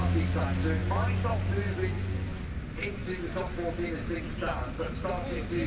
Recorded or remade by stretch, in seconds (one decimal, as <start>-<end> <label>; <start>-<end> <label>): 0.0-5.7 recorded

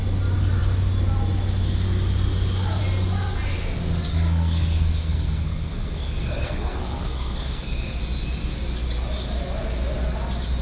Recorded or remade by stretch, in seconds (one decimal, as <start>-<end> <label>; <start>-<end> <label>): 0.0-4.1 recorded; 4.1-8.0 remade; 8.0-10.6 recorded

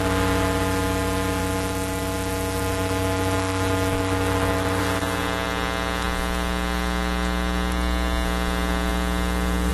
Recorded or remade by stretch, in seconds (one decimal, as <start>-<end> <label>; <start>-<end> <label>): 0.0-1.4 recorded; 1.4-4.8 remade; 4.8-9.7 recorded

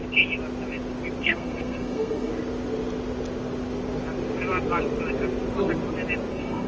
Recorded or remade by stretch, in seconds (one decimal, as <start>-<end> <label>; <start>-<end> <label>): 0.0-1.2 recorded; 1.2-2.3 remade; 2.3-6.3 recorded; 6.3-6.7 remade

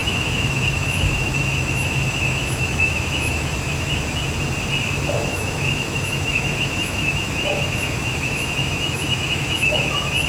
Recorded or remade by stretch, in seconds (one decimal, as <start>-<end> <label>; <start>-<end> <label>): 0.0-3.9 remade; 3.9-5.3 recorded; 5.3-10.3 remade